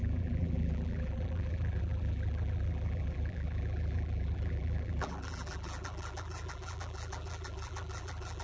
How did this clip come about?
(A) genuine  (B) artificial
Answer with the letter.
B